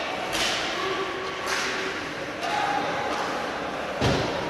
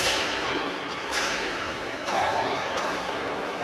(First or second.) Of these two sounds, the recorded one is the first